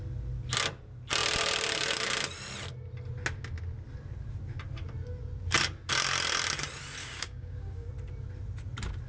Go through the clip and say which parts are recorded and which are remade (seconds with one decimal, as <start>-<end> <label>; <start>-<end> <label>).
0.0-7.0 recorded; 7.0-7.9 remade; 7.9-9.1 recorded

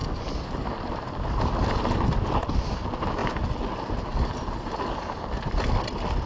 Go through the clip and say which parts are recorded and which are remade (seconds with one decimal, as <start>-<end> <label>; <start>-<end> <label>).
0.0-6.3 recorded

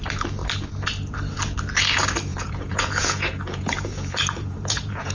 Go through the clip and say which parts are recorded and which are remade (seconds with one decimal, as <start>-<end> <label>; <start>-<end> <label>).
0.0-2.3 recorded; 2.3-5.1 remade

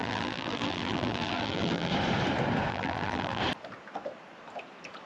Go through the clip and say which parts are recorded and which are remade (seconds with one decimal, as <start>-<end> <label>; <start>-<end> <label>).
0.0-1.9 remade; 1.9-2.7 recorded; 2.7-3.4 remade; 3.4-5.1 recorded